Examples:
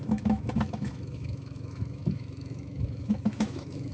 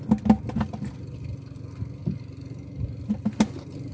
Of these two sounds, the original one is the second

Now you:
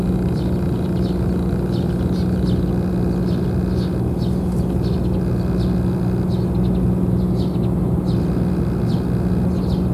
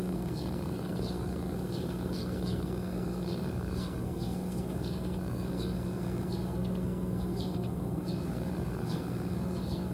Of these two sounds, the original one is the first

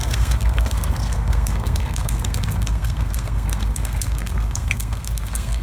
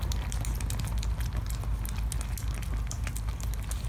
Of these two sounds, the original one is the second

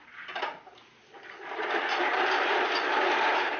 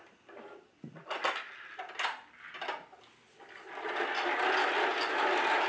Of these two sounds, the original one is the second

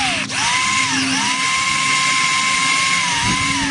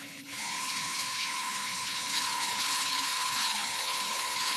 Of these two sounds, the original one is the first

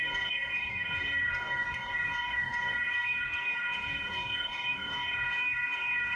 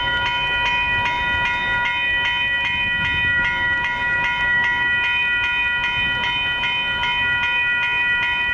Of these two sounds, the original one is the second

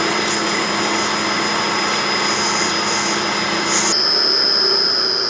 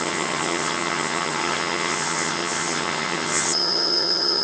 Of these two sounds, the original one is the first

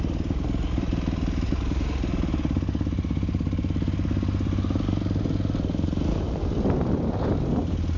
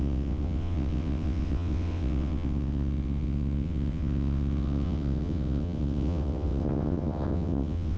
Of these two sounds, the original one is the first